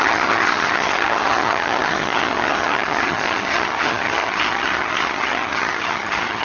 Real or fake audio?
fake